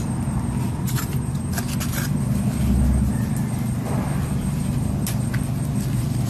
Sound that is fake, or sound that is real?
real